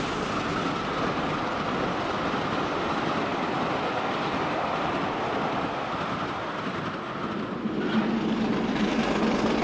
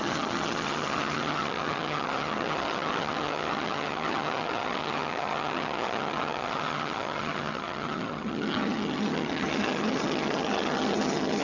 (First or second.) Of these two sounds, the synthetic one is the second